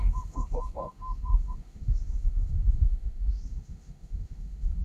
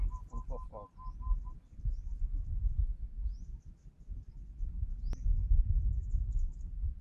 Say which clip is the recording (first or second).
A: second